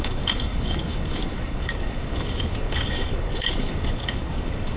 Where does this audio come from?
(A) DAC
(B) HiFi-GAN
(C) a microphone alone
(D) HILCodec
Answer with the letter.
A